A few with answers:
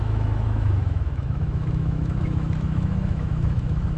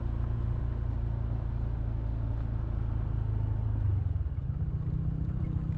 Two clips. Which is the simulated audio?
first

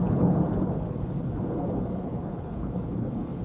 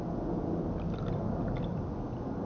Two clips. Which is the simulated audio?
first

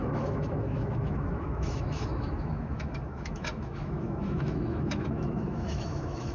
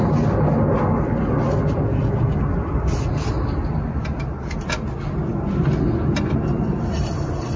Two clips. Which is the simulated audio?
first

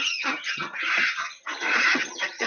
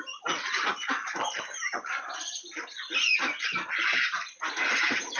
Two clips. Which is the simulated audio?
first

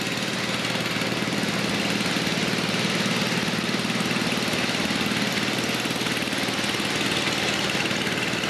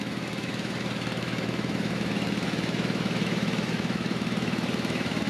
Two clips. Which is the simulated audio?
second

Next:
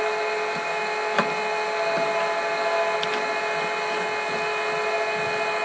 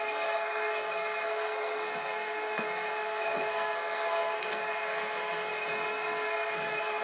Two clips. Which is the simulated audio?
second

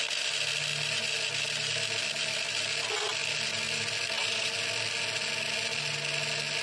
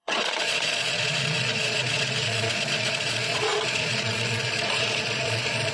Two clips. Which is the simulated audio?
second